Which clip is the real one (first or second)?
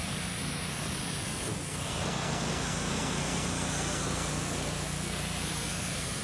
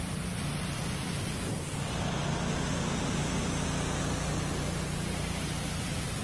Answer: second